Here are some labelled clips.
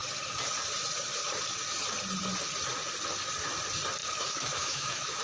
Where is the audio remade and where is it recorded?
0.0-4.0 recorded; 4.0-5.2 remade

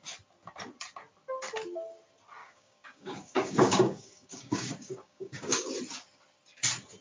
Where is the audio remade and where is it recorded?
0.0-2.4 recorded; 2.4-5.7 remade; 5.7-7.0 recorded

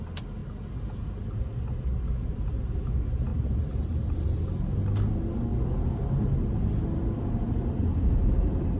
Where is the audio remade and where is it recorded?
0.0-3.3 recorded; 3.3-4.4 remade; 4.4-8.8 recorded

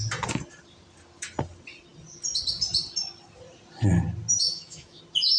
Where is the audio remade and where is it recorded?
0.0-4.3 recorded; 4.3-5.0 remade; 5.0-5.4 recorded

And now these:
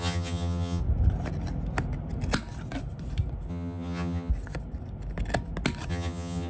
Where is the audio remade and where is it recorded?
0.0-0.8 remade; 0.8-3.5 recorded; 3.5-4.3 remade; 4.3-5.9 recorded; 5.9-6.5 remade

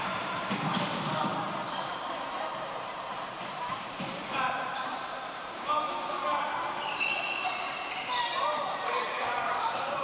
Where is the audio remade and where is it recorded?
0.0-10.0 remade

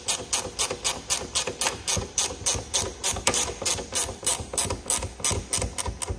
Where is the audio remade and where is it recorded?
0.0-3.0 recorded; 3.0-4.6 remade; 4.6-6.2 recorded

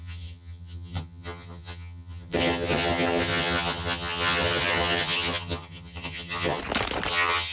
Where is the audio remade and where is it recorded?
0.0-6.6 remade; 6.6-7.1 recorded; 7.1-7.5 remade